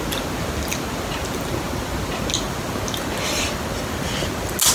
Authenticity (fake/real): real